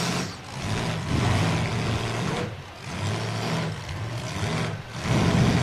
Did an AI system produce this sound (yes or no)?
no